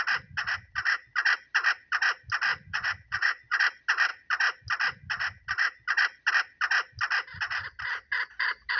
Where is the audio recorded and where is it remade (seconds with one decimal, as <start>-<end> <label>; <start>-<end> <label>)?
0.0-2.5 recorded; 2.5-3.6 remade; 3.6-8.8 recorded